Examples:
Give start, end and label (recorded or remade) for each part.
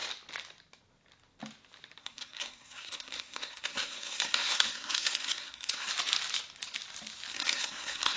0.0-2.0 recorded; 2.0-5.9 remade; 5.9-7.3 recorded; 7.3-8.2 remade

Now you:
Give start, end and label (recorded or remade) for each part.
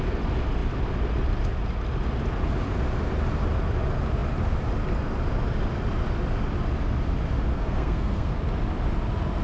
0.0-7.5 recorded; 7.5-8.3 remade; 8.3-9.4 recorded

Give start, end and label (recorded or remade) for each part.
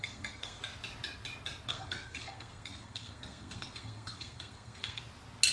0.0-0.6 remade; 0.6-1.7 recorded; 1.7-5.0 remade; 5.0-5.5 recorded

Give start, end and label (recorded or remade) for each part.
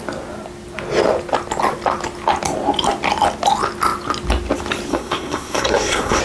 0.0-4.9 recorded; 4.9-6.2 remade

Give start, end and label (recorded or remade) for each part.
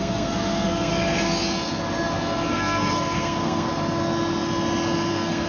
0.0-0.9 remade; 0.9-2.5 recorded; 2.5-3.7 remade; 3.7-5.1 recorded; 5.1-5.5 remade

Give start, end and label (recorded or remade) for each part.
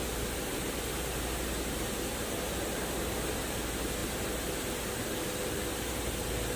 0.0-6.6 recorded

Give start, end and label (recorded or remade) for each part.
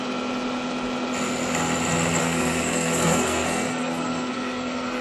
0.0-2.2 recorded; 2.2-5.0 remade